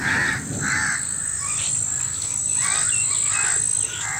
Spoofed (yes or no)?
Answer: no